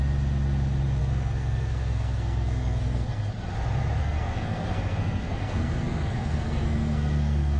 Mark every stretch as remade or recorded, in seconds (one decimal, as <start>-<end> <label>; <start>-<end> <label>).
0.0-1.0 recorded; 1.0-3.3 remade; 3.3-4.0 recorded; 4.0-7.6 remade

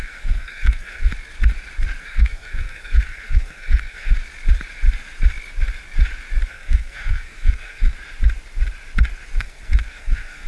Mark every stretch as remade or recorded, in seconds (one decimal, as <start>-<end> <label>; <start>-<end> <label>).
0.0-1.1 remade; 1.1-2.0 recorded; 2.0-4.2 remade; 4.2-6.5 recorded; 6.5-7.9 remade; 7.9-9.4 recorded; 9.4-10.5 remade

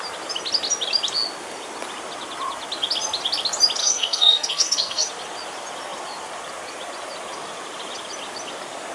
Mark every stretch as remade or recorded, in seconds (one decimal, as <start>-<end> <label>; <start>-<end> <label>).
0.0-3.8 recorded; 3.8-5.1 remade; 5.1-8.9 recorded

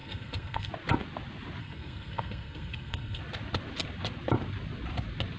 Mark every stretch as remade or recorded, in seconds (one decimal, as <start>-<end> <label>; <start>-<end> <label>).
0.0-0.7 remade; 0.7-1.6 recorded; 1.6-3.2 remade; 3.2-5.4 recorded

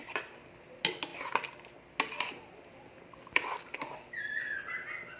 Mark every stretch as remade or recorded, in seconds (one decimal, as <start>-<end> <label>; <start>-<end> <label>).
0.0-5.2 recorded

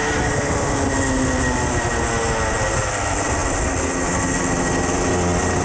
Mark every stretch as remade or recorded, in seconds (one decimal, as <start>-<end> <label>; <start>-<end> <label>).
0.0-5.6 recorded

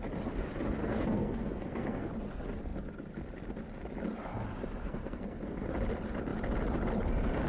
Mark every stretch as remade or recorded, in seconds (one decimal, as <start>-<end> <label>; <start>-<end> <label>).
0.0-0.8 recorded; 0.8-2.1 remade; 2.1-4.8 recorded; 4.8-5.7 remade; 5.7-7.5 recorded

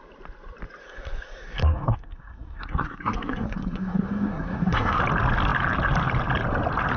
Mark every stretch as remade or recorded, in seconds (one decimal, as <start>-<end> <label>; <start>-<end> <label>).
0.0-0.8 recorded; 0.8-5.0 remade; 5.0-7.0 recorded